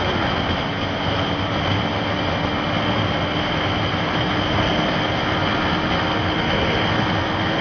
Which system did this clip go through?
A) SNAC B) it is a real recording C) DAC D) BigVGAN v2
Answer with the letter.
B